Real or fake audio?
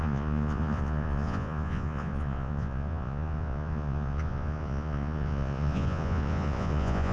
fake